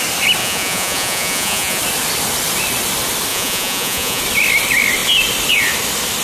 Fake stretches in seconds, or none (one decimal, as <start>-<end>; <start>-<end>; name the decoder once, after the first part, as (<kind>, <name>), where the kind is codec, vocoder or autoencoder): 0.4-1.8 (vocoder, Vocos); 3.3-4.2